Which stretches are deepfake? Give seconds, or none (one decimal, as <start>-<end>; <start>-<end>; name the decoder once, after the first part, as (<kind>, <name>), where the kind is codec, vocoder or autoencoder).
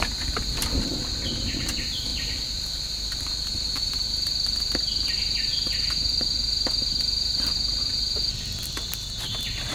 none